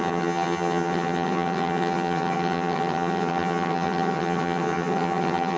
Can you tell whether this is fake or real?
fake